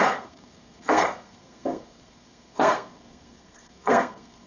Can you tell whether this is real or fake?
fake